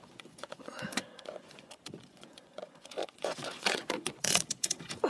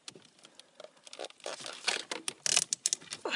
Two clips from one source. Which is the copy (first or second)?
first